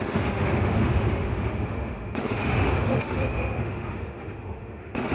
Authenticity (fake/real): fake